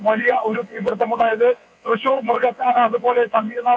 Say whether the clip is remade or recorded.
remade